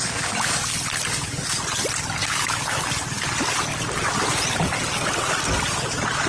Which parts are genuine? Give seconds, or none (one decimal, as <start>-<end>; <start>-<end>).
0.0-2.2; 2.8-6.3